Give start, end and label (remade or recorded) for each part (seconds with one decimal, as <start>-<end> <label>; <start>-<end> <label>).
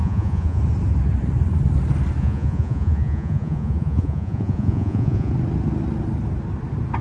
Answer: 0.0-0.6 remade; 0.6-2.2 recorded; 2.2-5.3 remade; 5.3-7.0 recorded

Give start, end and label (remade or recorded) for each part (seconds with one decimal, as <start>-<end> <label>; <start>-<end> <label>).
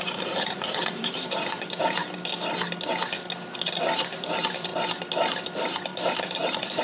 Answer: 0.0-2.0 remade; 2.0-3.8 recorded; 3.8-4.7 remade; 4.7-5.4 recorded; 5.4-6.8 remade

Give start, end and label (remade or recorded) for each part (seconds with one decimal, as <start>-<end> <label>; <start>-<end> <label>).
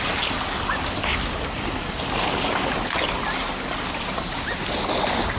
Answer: 0.0-5.4 recorded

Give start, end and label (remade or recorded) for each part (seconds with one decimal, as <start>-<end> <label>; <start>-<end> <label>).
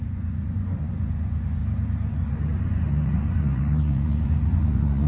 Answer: 0.0-1.6 remade; 1.6-2.1 recorded; 2.1-5.1 remade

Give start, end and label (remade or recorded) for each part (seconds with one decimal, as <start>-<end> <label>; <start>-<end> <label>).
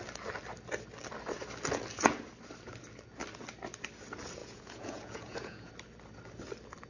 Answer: 0.0-4.4 recorded; 4.4-5.7 remade; 5.7-6.9 recorded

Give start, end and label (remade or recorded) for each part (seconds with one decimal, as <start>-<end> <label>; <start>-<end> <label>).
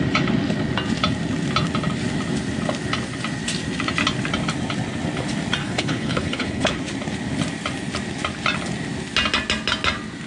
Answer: 0.0-5.6 recorded; 5.6-6.8 remade; 6.8-10.3 recorded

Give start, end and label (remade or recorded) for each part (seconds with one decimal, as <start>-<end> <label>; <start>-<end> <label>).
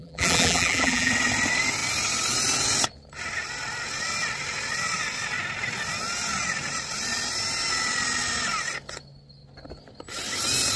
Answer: 0.0-1.1 remade; 1.1-10.8 recorded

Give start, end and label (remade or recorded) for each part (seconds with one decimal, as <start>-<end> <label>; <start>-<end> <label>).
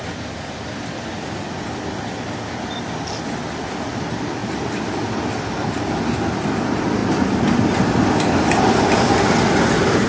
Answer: 0.0-10.1 recorded